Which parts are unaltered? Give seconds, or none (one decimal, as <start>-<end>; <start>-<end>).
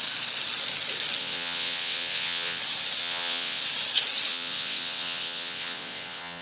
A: 0.0-1.2; 2.6-3.0; 3.6-4.3